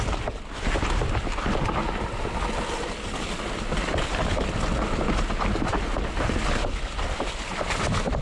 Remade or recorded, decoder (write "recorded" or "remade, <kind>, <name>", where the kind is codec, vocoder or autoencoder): recorded